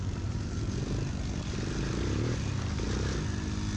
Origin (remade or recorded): recorded